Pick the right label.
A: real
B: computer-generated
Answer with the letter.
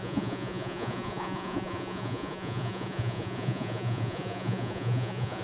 B